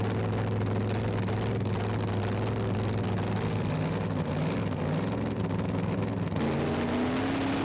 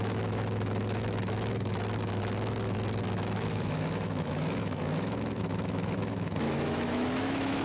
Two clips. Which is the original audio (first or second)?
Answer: first